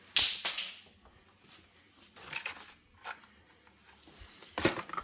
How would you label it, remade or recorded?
recorded